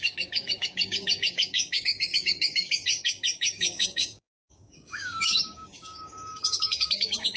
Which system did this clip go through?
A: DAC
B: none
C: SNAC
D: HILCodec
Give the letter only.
A